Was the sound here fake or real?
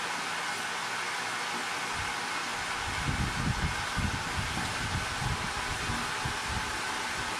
real